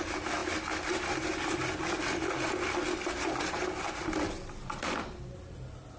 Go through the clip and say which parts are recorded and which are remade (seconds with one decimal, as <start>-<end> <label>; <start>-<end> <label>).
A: 0.0-6.0 recorded